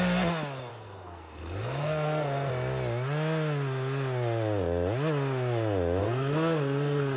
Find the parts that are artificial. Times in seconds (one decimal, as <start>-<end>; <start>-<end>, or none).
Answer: 0.7-2.5; 6.0-7.2